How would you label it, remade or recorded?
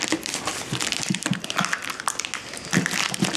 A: recorded